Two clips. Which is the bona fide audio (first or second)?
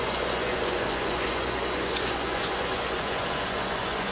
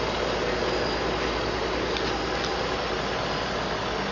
second